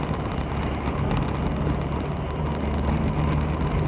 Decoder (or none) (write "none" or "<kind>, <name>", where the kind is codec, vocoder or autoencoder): none